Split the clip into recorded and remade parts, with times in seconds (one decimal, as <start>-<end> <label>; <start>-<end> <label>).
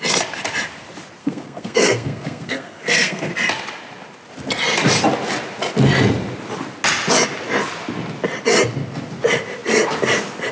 0.0-1.2 recorded; 1.2-3.3 remade; 3.3-10.5 recorded